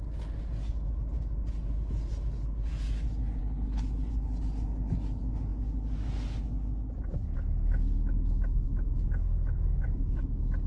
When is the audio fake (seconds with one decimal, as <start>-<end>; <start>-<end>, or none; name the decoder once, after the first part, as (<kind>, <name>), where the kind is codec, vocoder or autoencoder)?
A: 3.4-4.1 (codec, HILCodec)